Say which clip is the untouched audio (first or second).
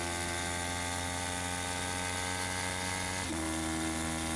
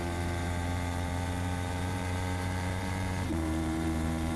first